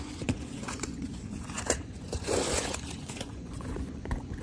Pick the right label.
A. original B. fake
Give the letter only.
B